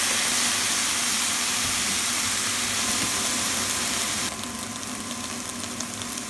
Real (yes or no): yes